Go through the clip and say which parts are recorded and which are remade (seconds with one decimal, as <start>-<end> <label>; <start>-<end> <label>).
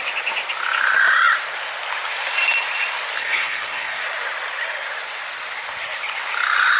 0.0-3.2 recorded; 3.2-4.0 remade; 4.0-6.8 recorded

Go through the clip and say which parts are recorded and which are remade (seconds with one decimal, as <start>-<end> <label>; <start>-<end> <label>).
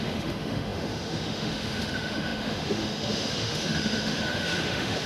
0.0-5.1 remade